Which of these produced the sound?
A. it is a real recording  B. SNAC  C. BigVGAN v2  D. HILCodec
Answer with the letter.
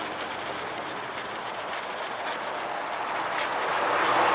A